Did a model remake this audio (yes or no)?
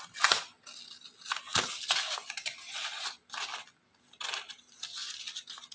no